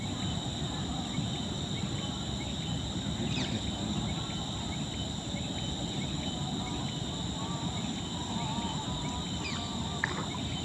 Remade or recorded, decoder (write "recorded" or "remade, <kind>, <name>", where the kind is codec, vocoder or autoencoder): recorded